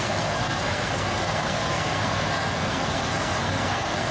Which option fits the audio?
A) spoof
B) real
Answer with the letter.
A